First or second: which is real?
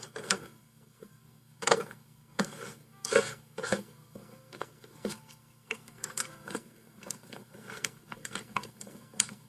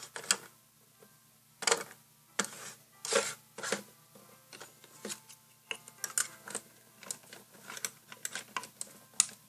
second